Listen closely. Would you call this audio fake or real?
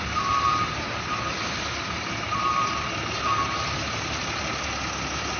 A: real